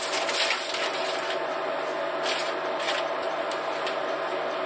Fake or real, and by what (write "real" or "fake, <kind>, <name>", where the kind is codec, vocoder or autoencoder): real